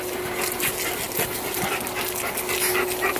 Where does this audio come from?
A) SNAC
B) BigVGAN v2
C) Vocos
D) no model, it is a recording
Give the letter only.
D